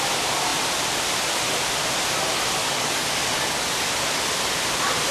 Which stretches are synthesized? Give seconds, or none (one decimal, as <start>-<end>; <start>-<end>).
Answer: 2.6-3.9